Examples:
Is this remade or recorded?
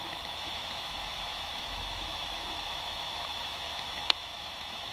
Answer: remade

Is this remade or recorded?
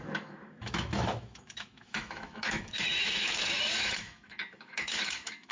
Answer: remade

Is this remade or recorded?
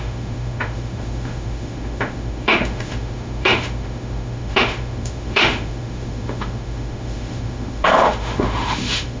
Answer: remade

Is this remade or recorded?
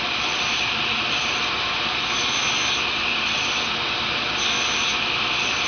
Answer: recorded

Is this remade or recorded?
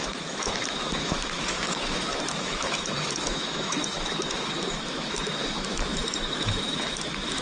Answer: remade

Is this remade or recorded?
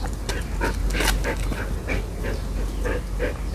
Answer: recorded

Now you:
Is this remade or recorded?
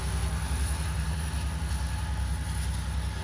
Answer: recorded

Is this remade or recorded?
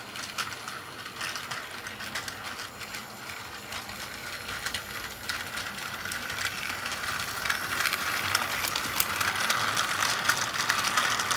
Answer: recorded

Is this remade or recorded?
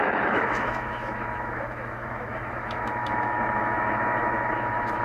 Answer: remade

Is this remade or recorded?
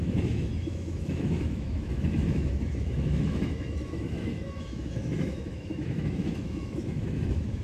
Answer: remade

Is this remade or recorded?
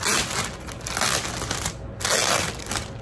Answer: recorded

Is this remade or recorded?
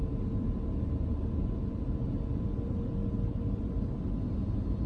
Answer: recorded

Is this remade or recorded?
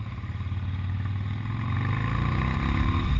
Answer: recorded